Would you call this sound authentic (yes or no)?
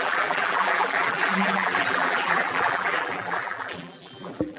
no